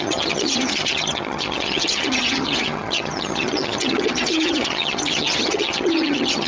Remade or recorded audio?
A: remade